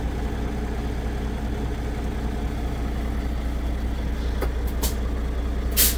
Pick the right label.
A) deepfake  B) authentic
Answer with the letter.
B